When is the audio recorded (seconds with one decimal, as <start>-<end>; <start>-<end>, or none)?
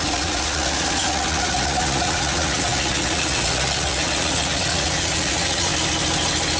5.7-6.6